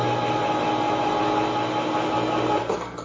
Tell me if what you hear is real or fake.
real